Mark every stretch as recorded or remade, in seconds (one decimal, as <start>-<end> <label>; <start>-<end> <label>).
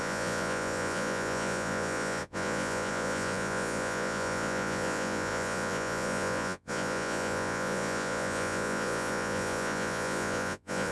0.0-10.9 remade